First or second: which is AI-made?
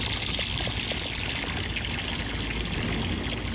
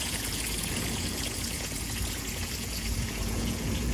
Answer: second